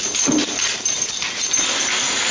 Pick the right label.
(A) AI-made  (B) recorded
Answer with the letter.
B